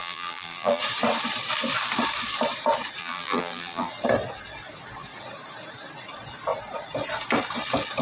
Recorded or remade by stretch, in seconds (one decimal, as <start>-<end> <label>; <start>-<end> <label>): 0.0-0.8 remade; 0.8-3.0 recorded; 3.0-3.9 remade; 3.9-8.0 recorded